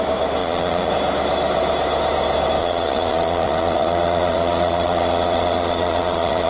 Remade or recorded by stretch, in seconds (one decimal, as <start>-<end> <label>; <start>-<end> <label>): 0.0-0.4 recorded; 0.4-0.9 remade; 0.9-2.6 recorded; 2.6-6.5 remade